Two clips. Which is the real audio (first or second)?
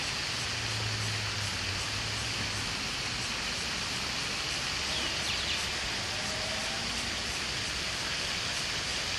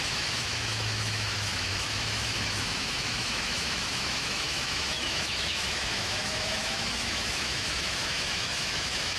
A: first